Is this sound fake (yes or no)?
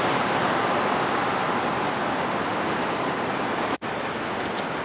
no